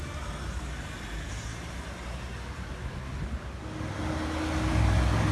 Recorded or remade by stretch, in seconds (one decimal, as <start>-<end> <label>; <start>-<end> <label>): 0.0-5.3 recorded